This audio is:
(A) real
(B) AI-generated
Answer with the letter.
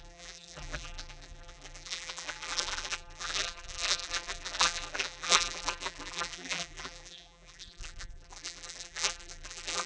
B